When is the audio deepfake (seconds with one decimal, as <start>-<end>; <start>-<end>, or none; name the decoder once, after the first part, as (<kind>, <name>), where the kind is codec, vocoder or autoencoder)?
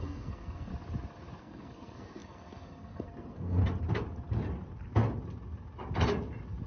0.0-0.7 (codec, SNAC); 1.4-3.6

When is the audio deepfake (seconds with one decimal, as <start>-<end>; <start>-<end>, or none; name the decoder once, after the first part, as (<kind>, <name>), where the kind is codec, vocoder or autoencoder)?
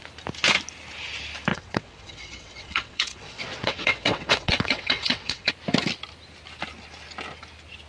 1.5-5.5 (vocoder, WaveNeXt)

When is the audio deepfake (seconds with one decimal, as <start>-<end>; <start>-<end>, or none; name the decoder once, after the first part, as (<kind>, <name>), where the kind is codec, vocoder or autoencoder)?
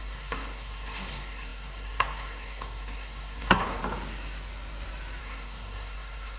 0.0-3.8 (codec, SNAC); 5.2-6.4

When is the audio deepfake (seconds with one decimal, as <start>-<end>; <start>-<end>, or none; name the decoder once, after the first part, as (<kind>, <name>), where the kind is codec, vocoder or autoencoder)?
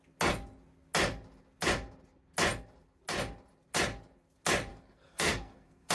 4.7-5.9 (codec, SNAC)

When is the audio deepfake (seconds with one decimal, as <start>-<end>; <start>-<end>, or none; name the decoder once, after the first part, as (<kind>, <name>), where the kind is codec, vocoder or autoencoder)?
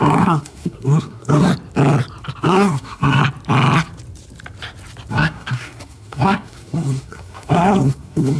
0.0-1.5 (codec, SNAC); 2.4-3.2; 5.1-8.4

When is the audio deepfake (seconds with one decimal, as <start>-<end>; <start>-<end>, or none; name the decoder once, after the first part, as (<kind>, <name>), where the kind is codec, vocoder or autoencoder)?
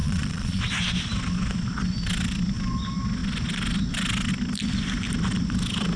0.0-0.6 (vocoder, Vocos)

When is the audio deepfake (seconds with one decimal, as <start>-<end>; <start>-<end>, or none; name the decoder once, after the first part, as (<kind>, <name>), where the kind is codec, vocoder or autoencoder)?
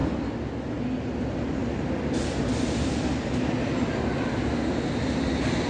none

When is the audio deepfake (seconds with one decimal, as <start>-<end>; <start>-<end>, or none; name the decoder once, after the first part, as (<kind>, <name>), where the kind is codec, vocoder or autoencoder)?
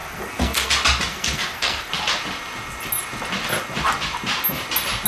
0.0-0.7 (codec, SNAC); 1.1-1.9